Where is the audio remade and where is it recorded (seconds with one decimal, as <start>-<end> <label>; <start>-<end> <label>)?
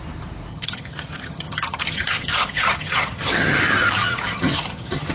0.0-0.5 recorded; 0.5-3.6 remade; 3.6-4.0 recorded; 4.0-5.1 remade